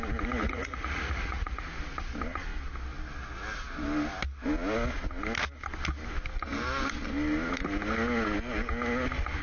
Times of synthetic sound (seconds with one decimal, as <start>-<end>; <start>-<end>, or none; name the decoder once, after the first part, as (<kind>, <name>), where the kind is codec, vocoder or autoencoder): 0.4-1.6 (vocoder, Vocos)